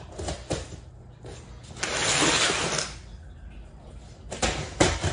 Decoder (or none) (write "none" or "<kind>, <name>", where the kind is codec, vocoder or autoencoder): none